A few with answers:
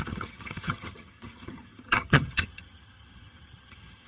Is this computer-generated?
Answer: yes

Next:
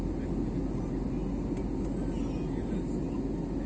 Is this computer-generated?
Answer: no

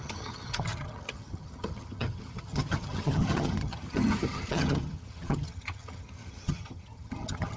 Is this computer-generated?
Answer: yes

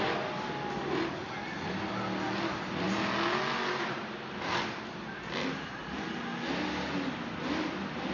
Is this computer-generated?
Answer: no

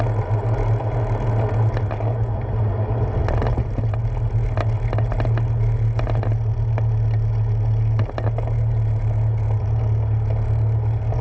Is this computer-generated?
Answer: no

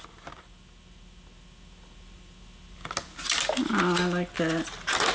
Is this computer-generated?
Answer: no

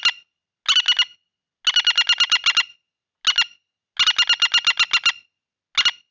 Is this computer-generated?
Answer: no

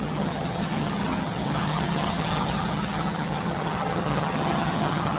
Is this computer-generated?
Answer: yes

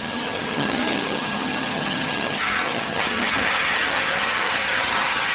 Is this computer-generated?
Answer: yes